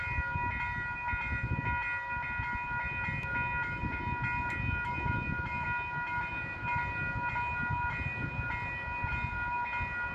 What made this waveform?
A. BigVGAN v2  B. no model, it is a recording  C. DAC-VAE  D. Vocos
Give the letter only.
B